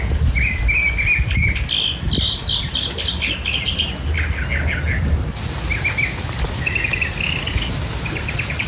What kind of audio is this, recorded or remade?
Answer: recorded